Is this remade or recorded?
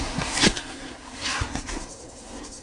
remade